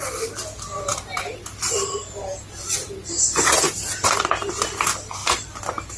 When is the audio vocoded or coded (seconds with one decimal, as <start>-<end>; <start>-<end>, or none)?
0.9-4.5; 5.2-6.0